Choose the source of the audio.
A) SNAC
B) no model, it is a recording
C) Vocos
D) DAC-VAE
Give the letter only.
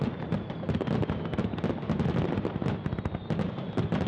B